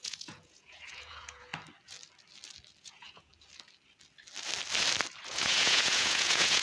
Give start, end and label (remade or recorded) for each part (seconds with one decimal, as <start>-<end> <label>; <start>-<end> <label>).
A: 0.0-1.5 remade; 1.5-2.8 recorded; 2.8-3.3 remade; 3.3-5.3 recorded; 5.3-6.6 remade